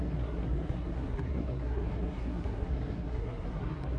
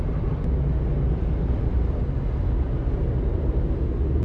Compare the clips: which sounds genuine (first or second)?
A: second